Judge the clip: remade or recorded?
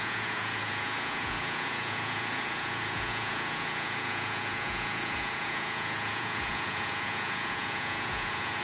remade